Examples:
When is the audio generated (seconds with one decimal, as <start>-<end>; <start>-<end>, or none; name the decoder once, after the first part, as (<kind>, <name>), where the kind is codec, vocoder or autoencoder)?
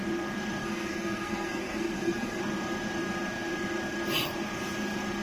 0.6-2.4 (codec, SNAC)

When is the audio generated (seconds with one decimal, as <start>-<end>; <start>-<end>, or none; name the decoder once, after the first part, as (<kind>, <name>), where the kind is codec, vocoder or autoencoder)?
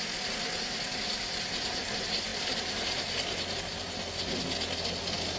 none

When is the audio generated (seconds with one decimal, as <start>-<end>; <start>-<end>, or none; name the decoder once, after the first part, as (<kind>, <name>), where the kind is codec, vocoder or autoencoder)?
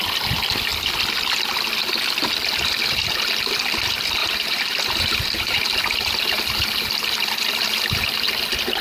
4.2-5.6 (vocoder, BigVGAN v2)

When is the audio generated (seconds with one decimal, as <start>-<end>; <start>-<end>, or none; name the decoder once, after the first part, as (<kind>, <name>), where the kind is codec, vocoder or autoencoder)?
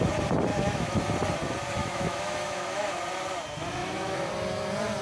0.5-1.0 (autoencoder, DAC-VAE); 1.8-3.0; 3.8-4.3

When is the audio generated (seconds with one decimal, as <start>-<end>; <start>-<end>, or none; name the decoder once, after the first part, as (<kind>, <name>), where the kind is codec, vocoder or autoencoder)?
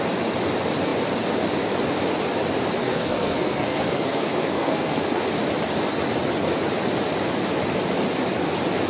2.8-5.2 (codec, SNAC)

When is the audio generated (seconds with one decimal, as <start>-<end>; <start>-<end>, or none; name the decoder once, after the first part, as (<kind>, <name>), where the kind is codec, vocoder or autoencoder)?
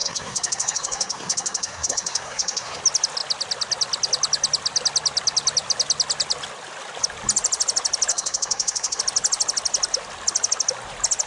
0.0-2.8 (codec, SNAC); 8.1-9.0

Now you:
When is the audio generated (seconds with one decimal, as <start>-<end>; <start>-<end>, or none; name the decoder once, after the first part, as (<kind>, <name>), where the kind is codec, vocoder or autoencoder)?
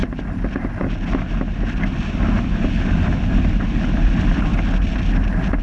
none